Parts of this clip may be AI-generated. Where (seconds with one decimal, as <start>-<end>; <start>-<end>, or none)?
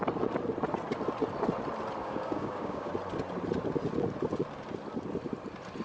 2.0-2.9